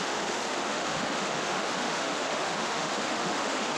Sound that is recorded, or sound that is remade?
remade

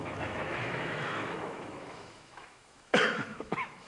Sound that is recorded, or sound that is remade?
remade